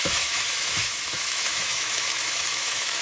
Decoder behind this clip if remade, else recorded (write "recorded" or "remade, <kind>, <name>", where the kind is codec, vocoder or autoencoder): remade, autoencoder, DAC-VAE